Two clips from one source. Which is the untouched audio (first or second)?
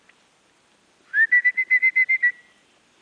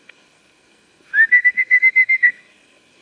first